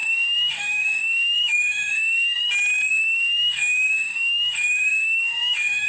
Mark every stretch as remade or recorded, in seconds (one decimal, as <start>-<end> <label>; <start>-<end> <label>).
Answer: 0.0-2.4 remade; 2.4-2.9 recorded; 2.9-5.9 remade